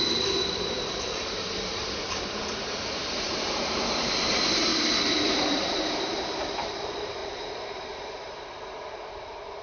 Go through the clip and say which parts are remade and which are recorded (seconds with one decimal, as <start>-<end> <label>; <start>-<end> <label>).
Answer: 0.0-4.7 remade; 4.7-5.7 recorded; 5.7-9.6 remade